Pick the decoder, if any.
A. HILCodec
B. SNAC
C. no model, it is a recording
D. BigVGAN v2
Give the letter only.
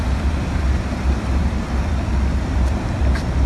D